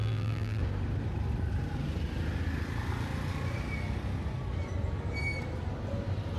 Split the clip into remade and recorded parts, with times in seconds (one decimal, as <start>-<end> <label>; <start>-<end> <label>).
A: 0.0-0.6 remade; 0.6-6.4 recorded